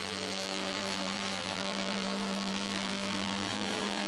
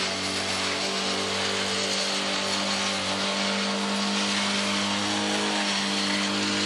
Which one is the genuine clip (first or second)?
second